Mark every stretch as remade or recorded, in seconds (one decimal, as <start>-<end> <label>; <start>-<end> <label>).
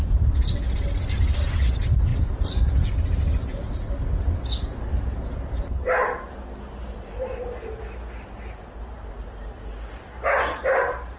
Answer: 0.0-2.1 recorded; 2.1-2.9 remade; 2.9-11.2 recorded